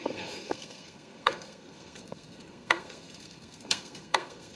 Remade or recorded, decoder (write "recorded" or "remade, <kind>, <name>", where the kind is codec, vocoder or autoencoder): remade, codec, SNAC